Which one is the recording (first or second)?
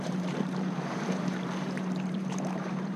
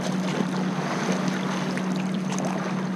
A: second